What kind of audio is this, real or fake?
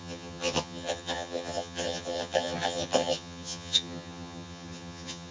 fake